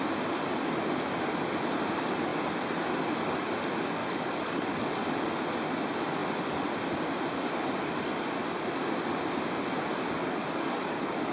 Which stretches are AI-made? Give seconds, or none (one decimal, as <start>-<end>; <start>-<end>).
4.0-5.0; 10.4-11.3